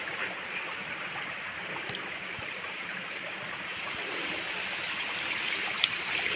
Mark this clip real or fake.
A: fake